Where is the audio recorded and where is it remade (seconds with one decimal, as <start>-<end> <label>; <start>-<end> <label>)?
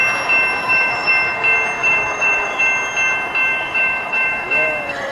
0.0-0.6 recorded; 0.6-1.1 remade; 1.1-1.8 recorded; 1.8-2.6 remade; 2.6-3.5 recorded; 3.5-5.1 remade